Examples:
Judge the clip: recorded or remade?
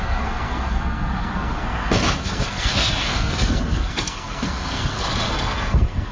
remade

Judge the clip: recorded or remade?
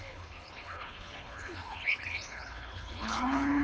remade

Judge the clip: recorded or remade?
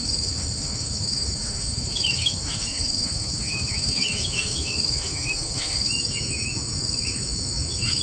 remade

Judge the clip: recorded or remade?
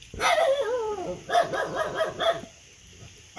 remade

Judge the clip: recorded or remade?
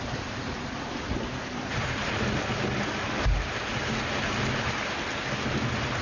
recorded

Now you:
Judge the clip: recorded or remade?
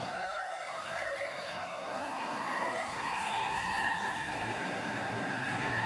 remade